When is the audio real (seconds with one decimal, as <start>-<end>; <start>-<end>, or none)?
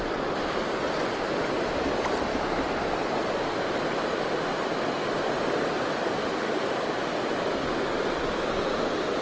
0.0-6.3; 6.8-9.2